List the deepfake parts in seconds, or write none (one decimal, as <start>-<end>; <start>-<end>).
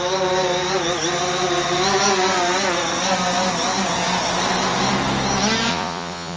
5.7-6.4